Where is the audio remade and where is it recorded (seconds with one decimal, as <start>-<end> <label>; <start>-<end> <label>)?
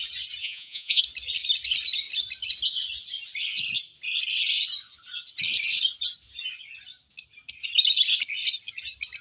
0.0-0.4 recorded; 0.4-1.0 remade; 1.0-9.2 recorded